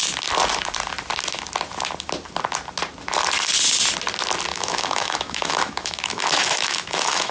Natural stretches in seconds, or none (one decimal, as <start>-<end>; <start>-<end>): 0.0-4.5